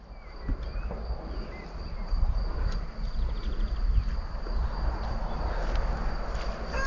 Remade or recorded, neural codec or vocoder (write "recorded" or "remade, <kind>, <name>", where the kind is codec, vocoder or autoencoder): recorded